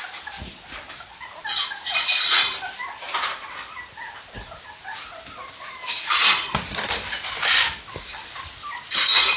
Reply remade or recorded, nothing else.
recorded